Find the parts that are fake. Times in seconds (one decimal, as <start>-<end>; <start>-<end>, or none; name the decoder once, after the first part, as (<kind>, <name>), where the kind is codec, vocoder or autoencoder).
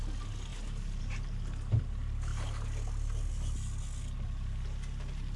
none